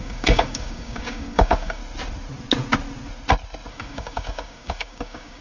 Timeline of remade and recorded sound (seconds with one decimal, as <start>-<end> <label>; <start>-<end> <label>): 0.0-1.8 remade; 1.8-3.7 recorded; 3.7-5.4 remade